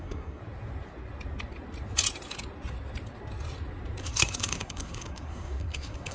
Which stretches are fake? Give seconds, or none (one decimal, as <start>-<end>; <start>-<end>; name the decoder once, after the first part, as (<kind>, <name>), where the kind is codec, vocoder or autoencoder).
0.0-0.4 (codec, SNAC); 4.0-6.1